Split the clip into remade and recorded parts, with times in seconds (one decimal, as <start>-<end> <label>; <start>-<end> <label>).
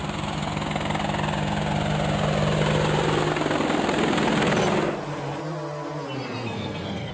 0.0-6.4 recorded; 6.4-7.1 remade